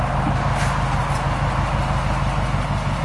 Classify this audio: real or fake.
real